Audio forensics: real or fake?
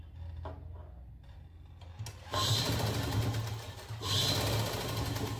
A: real